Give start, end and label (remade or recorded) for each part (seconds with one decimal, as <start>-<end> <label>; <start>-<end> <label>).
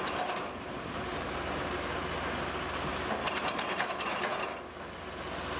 0.0-1.1 recorded; 1.1-1.7 remade; 1.7-2.9 recorded; 2.9-4.9 remade; 4.9-5.6 recorded